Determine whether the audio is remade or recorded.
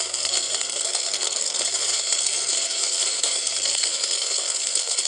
remade